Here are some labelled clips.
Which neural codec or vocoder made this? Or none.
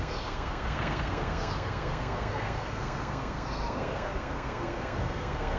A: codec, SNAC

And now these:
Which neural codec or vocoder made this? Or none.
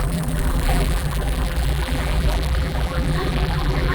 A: vocoder, BigVGAN v2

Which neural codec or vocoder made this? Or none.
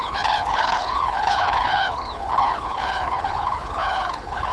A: codec, HILCodec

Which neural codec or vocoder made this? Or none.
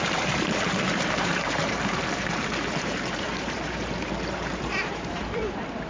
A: vocoder, BigVGAN v2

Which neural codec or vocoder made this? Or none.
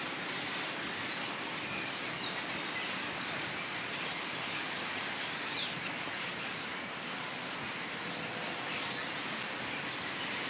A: none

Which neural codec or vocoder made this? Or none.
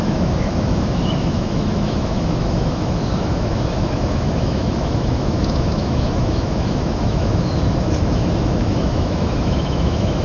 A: autoencoder, DAC-VAE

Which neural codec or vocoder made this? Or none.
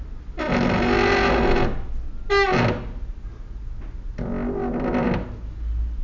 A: none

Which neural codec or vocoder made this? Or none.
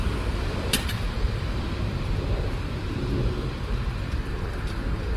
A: vocoder, BigVGAN v2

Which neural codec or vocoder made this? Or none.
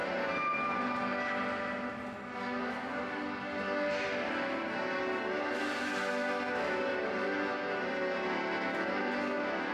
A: none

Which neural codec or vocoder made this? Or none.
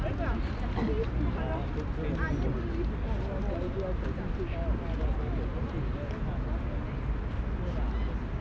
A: none